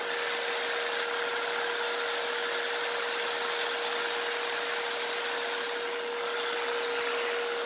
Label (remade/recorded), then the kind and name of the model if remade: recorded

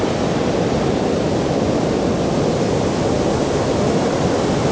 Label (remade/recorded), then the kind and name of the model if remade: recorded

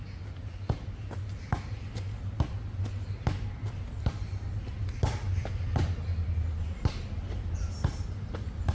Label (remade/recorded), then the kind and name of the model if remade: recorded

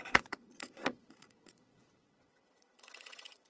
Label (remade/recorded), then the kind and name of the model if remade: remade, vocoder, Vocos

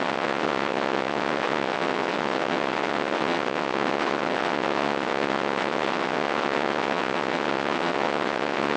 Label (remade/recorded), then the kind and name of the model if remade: remade, vocoder, WaveNeXt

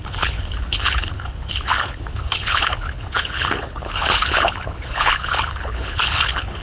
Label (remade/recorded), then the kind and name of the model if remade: remade, codec, HILCodec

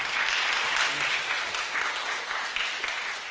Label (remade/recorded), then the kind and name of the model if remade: recorded